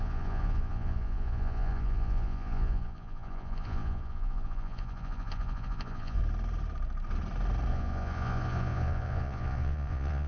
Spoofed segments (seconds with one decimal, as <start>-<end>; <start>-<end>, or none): 0.0-6.2; 7.7-10.3